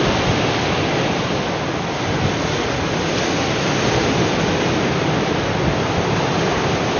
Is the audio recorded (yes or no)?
yes